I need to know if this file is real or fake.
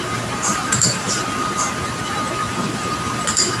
fake